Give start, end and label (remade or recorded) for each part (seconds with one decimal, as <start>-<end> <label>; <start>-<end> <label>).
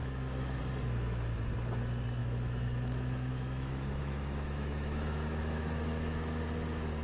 0.0-0.6 remade; 0.6-2.2 recorded; 2.2-6.4 remade; 6.4-7.0 recorded